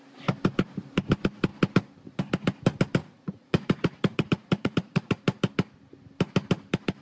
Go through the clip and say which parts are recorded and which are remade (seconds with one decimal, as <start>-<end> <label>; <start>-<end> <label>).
0.0-3.0 recorded; 3.0-5.2 remade; 5.2-7.0 recorded